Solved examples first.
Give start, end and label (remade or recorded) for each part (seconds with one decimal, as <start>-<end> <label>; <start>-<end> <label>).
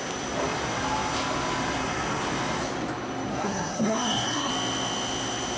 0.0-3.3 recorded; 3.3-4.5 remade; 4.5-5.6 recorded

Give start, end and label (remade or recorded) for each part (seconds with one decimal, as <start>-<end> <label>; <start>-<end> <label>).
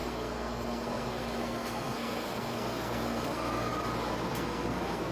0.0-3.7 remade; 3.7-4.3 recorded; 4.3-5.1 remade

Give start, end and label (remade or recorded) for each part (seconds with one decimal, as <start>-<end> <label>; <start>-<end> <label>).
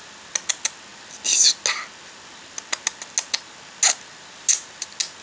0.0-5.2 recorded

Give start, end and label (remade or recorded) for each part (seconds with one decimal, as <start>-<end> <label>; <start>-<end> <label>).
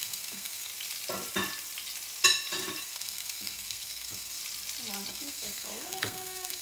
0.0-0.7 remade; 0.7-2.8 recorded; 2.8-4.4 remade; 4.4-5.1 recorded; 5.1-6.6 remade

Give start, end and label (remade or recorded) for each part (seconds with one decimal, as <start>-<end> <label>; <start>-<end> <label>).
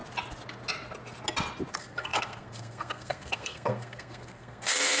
0.0-1.7 recorded; 1.7-5.0 remade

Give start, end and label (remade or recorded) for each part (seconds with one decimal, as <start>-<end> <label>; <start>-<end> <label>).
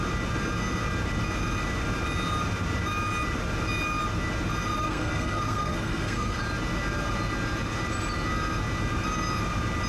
0.0-4.8 recorded; 4.8-6.4 remade; 6.4-9.9 recorded